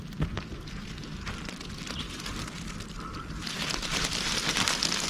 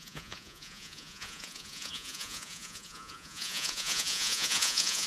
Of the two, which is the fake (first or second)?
second